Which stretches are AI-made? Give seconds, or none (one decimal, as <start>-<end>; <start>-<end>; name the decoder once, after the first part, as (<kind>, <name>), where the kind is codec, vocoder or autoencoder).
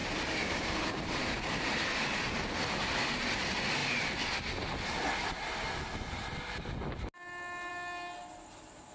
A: 0.0-2.2 (vocoder, BigVGAN v2)